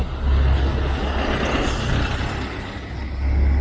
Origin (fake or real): real